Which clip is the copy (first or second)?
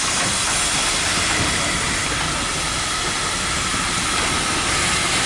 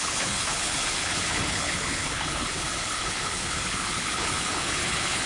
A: second